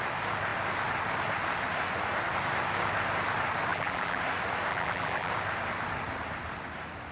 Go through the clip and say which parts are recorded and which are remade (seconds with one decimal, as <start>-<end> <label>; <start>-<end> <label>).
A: 0.0-3.7 recorded; 3.7-4.2 remade; 4.2-4.7 recorded; 4.7-5.3 remade; 5.3-7.1 recorded